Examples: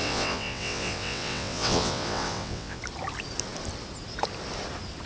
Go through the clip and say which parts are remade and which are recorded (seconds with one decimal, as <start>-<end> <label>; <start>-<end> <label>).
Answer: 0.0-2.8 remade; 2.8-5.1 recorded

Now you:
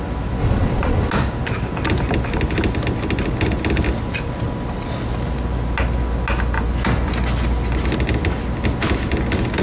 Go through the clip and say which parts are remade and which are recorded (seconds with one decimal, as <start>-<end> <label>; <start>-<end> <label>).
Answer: 0.0-0.4 recorded; 0.4-1.1 remade; 1.1-9.6 recorded

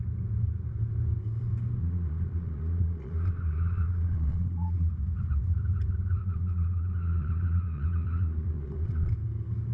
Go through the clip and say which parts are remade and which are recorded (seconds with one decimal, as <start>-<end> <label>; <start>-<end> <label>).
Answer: 0.0-1.8 recorded; 1.8-4.9 remade; 4.9-6.2 recorded; 6.2-9.1 remade; 9.1-9.7 recorded

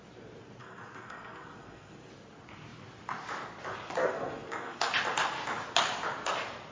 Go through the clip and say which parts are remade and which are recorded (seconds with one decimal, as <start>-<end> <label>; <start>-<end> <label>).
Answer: 0.0-0.6 recorded; 0.6-2.1 remade; 2.1-4.0 recorded; 4.0-4.9 remade; 4.9-6.7 recorded